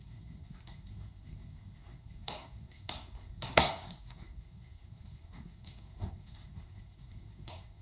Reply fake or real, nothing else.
fake